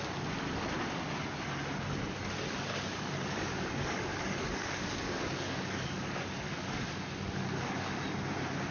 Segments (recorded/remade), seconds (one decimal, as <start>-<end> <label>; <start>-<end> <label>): 0.0-2.7 recorded; 2.7-7.9 remade; 7.9-8.7 recorded